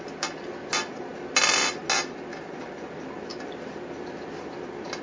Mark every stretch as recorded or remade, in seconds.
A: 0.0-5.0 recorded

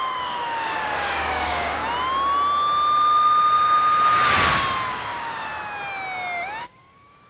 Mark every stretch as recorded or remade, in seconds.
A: 0.0-1.8 remade; 1.8-4.9 recorded; 4.9-5.5 remade; 5.5-6.6 recorded; 6.6-7.3 remade

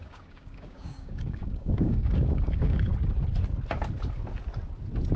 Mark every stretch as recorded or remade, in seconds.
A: 0.0-2.9 remade; 2.9-5.2 recorded

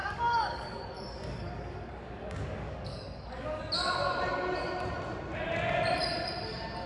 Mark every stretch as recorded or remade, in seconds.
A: 0.0-3.6 remade; 3.6-6.9 recorded

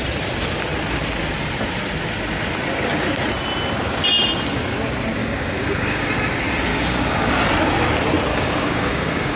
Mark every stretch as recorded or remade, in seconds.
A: 0.0-5.2 recorded; 5.2-6.1 remade; 6.1-6.7 recorded; 6.7-7.3 remade; 7.3-8.3 recorded; 8.3-9.4 remade